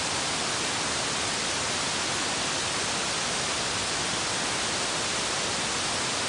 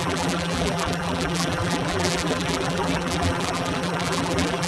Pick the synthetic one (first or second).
second